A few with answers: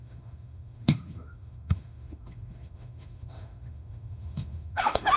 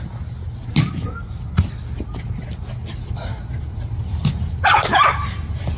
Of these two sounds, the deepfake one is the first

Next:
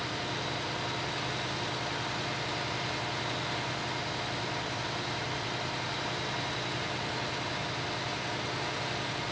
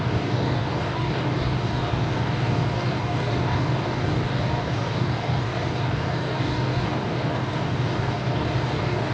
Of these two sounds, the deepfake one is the second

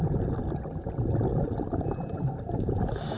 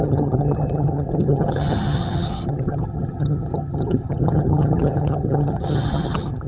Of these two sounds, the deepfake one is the second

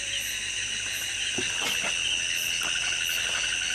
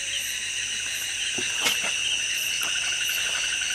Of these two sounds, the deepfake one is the second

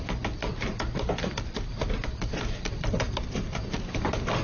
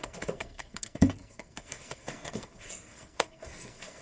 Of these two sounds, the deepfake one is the second